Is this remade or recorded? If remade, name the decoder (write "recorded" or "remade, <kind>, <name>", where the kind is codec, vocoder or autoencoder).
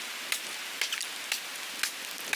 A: recorded